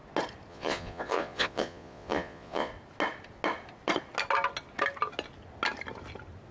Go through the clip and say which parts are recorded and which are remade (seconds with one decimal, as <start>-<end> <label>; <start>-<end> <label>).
0.0-0.5 recorded; 0.5-2.7 remade; 2.7-6.5 recorded